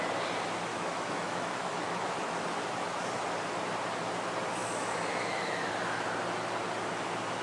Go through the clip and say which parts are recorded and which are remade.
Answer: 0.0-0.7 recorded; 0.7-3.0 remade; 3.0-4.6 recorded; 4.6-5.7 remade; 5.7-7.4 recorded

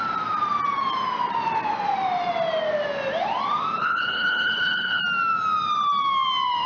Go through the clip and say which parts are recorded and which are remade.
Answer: 0.0-3.8 recorded; 3.8-5.0 remade; 5.0-6.7 recorded